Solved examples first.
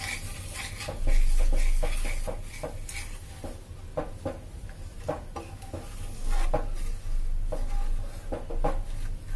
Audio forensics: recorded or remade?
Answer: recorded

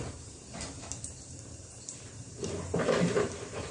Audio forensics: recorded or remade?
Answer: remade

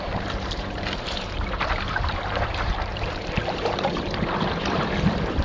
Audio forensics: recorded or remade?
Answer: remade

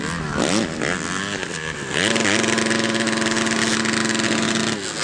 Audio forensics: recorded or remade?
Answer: recorded